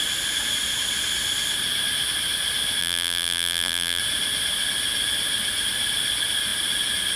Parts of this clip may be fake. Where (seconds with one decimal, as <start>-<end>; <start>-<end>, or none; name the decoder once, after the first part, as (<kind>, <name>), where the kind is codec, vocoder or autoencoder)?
2.8-4.0 (vocoder, BigVGAN v2)